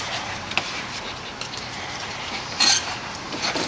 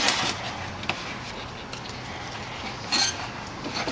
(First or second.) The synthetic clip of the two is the first